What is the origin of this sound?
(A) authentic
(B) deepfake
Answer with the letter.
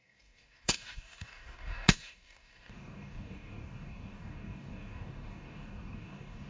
B